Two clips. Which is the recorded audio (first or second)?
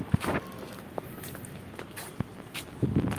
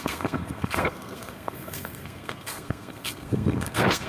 first